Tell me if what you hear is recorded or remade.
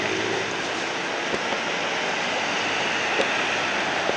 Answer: recorded